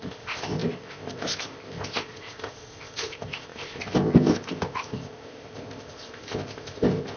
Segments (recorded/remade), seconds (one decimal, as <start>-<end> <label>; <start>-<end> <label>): 0.0-7.2 remade